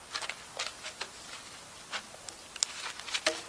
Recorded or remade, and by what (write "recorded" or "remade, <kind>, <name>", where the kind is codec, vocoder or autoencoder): recorded